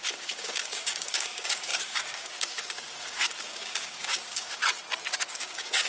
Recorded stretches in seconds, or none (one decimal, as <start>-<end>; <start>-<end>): 4.6-5.3